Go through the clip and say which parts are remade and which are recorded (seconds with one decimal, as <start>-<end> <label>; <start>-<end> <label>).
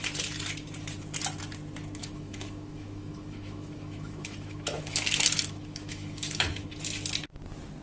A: 0.0-2.0 recorded; 2.0-6.7 remade; 6.7-7.8 recorded